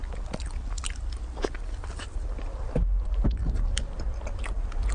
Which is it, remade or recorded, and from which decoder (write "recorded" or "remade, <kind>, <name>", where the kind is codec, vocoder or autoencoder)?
recorded